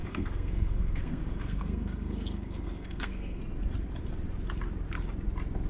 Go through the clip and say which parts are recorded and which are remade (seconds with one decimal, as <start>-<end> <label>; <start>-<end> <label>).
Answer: 0.0-3.4 remade; 3.4-5.7 recorded